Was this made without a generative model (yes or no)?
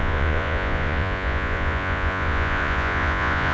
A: no